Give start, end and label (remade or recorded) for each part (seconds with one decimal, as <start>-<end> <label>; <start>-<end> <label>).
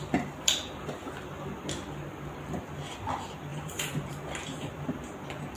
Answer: 0.0-3.5 recorded; 3.5-4.1 remade; 4.1-5.6 recorded